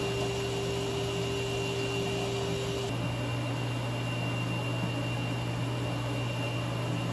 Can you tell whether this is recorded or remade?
recorded